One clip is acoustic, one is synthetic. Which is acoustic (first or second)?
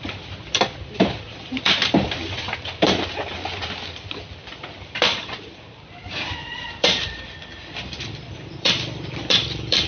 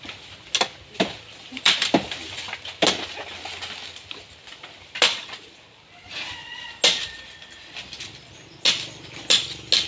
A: second